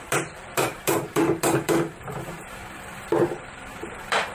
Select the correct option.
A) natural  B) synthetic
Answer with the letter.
B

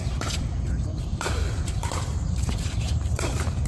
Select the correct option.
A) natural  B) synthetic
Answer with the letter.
B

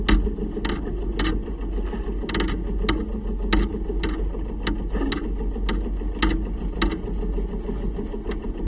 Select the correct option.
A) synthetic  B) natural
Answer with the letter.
B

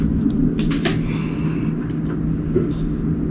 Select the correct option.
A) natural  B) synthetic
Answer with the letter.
A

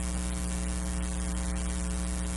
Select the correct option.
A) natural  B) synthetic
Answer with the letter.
A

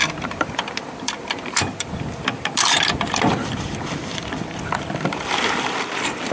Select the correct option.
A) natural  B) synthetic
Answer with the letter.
B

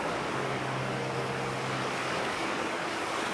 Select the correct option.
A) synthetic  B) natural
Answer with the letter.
A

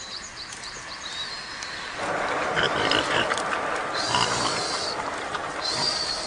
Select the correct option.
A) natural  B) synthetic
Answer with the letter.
A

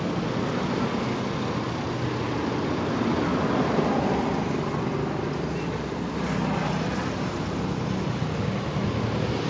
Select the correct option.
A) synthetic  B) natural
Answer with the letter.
B